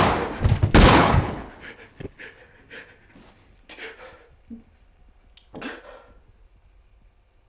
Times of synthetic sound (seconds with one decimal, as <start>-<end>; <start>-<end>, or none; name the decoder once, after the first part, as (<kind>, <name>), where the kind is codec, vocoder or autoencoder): 0.9-2.4 (codec, HILCodec)